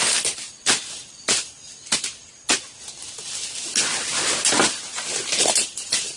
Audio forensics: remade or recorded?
recorded